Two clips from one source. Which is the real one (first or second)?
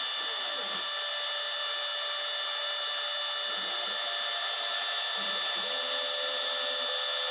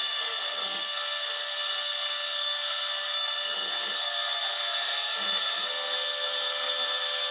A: first